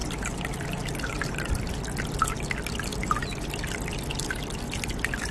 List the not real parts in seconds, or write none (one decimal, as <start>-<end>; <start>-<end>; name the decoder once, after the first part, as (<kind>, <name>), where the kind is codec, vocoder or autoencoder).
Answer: none